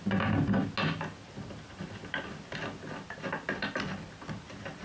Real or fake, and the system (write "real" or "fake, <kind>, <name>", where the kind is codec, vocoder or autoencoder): real